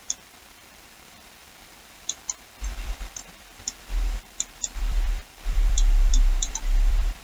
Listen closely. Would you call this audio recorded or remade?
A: remade